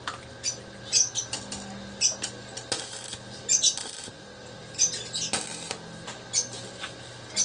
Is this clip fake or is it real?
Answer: real